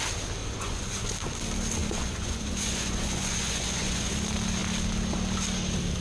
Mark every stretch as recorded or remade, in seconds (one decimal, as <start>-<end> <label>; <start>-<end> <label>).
0.0-0.4 recorded; 0.4-1.1 remade; 1.1-1.8 recorded; 1.8-4.1 remade; 4.1-6.0 recorded